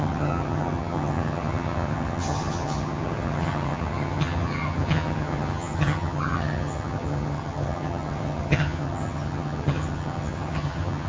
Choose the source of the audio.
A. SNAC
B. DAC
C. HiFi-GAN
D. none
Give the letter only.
C